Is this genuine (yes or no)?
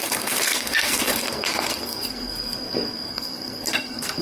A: no